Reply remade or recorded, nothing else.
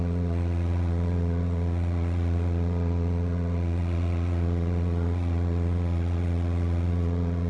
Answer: remade